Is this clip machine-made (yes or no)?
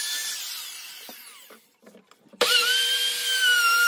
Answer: yes